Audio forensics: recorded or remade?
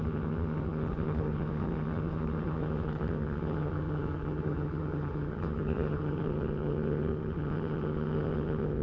remade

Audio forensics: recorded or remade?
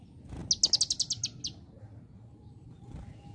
recorded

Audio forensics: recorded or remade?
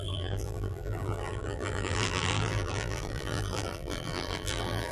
remade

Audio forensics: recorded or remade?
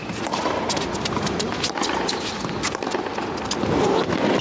recorded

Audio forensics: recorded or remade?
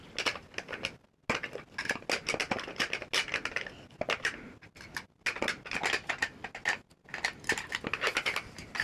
recorded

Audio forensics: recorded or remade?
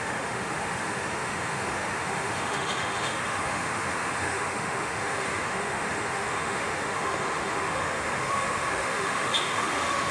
remade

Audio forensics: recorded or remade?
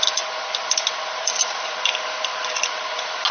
recorded